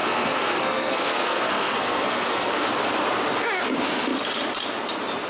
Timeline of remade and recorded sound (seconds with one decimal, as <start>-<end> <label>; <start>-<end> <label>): 0.0-2.5 remade; 2.5-5.3 recorded